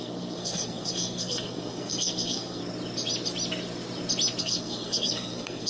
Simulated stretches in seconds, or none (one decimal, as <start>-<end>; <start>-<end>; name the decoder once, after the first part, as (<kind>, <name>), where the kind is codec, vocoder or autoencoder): 0.0-2.6 (codec, SNAC); 4.4-5.7

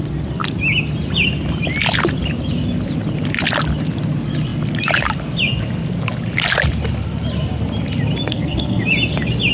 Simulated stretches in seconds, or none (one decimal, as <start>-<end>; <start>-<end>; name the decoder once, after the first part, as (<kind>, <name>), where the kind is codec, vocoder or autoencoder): 8.3-8.8 (codec, SNAC)

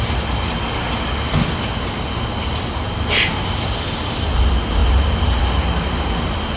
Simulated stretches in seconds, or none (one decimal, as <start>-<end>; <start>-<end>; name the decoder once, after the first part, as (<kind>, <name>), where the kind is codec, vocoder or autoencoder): none

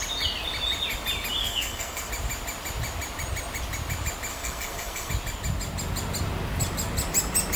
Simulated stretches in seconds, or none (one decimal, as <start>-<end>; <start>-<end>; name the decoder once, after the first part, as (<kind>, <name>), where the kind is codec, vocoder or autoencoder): 1.4-2.1 (codec, SNAC); 4.3-5.1

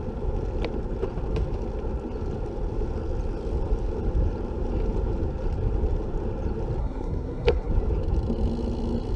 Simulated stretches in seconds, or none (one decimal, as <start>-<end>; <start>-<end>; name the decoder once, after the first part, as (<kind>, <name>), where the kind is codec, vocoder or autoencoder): 6.8-7.7 (codec, SNAC)